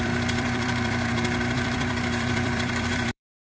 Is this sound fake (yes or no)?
yes